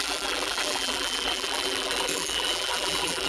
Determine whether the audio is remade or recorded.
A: remade